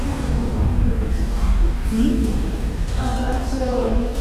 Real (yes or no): no